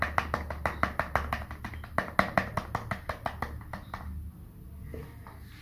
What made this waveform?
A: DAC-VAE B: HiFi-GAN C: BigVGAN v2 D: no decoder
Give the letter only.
D